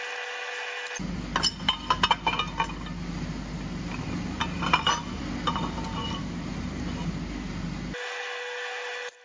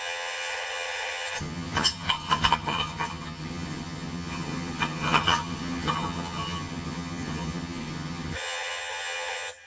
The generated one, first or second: second